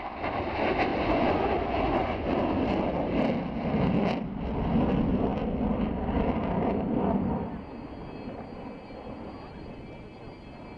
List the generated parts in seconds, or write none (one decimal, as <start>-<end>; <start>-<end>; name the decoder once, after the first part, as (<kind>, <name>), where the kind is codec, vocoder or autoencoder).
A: 0.9-2.5 (vocoder, Vocos)